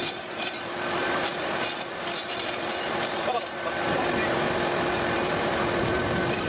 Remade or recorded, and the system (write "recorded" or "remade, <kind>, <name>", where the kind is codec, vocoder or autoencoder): remade, vocoder, BigVGAN v2